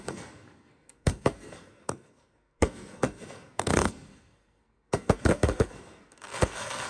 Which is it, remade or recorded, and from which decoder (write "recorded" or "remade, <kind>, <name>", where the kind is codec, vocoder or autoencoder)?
remade, codec, SNAC